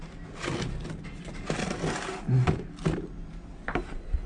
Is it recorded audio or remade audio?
recorded